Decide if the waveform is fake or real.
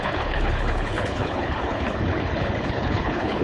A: fake